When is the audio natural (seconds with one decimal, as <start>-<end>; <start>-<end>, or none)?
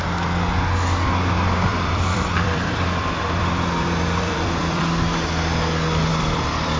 0.0-1.7; 4.8-6.1